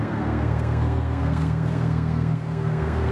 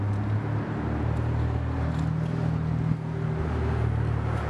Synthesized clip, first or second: first